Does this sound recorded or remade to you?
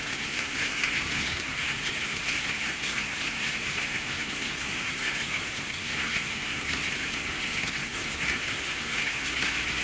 remade